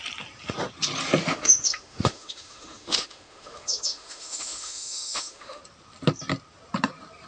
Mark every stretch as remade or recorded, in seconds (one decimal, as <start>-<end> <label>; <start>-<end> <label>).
0.0-1.2 recorded; 1.2-5.6 remade; 5.6-7.3 recorded

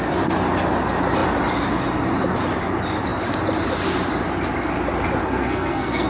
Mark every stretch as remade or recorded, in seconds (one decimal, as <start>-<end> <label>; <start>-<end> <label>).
0.0-5.2 recorded; 5.2-6.1 remade

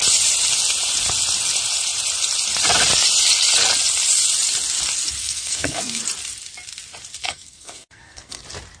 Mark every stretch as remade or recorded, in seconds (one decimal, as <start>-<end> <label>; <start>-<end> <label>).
0.0-5.2 recorded; 5.2-6.0 remade; 6.0-7.2 recorded; 7.2-8.4 remade; 8.4-8.8 recorded

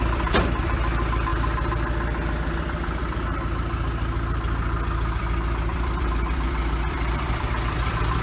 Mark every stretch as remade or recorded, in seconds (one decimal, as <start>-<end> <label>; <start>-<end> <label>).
0.0-8.2 remade

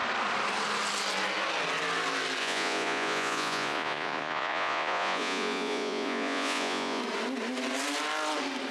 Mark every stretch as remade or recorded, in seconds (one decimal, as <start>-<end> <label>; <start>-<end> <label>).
0.0-2.4 recorded; 2.4-7.0 remade; 7.0-8.7 recorded

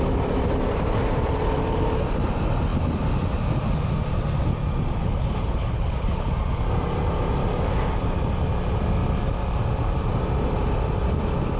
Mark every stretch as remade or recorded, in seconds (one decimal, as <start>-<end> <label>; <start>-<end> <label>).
0.0-5.0 recorded; 5.0-6.3 remade; 6.3-11.6 recorded

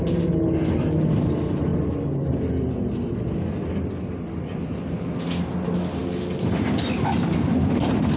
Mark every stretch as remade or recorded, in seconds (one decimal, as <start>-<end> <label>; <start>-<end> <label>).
0.0-8.2 recorded